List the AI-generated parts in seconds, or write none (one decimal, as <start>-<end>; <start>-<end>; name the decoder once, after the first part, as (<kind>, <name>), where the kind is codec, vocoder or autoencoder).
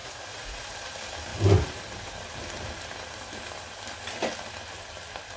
0.0-0.6 (vocoder, Vocos)